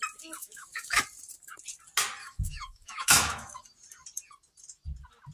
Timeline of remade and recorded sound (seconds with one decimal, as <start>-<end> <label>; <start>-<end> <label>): 0.0-0.4 recorded; 0.4-1.0 remade; 1.0-2.2 recorded; 2.2-3.6 remade; 3.6-5.3 recorded